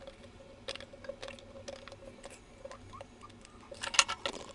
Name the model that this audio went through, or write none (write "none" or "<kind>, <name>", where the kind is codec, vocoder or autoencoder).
none